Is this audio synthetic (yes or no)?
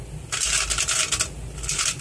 no